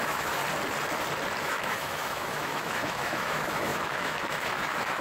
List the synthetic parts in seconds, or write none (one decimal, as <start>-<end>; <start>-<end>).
0.0-0.4; 1.4-5.0